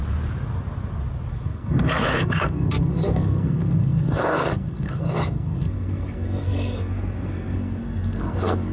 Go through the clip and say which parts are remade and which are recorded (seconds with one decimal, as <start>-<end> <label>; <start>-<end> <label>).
0.0-1.3 recorded; 1.3-8.7 remade